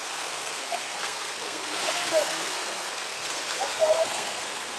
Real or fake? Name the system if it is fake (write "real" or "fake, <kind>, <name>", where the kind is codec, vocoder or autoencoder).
fake, codec, SNAC